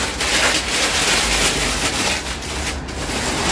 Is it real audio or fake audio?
real